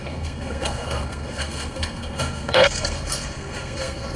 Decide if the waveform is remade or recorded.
remade